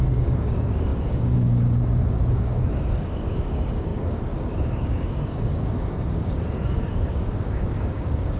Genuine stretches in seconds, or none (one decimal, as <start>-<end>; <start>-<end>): none